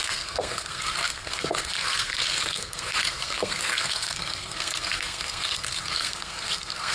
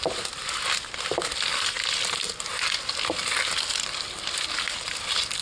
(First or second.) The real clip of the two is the second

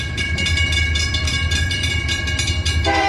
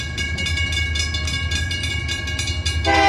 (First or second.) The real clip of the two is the second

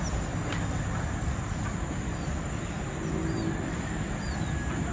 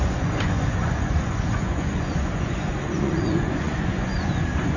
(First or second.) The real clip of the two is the first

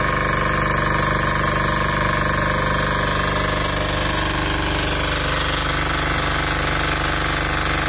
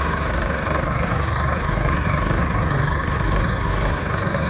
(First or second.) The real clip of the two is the first